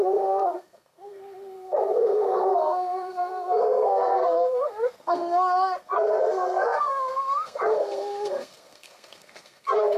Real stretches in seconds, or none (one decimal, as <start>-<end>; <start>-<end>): none